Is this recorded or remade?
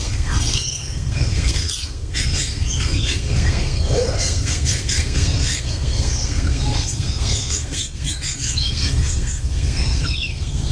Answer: remade